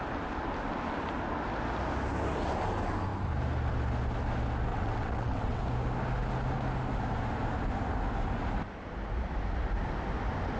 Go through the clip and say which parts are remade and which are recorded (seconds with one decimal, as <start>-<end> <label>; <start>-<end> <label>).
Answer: 0.0-4.7 recorded; 4.7-5.6 remade; 5.6-10.6 recorded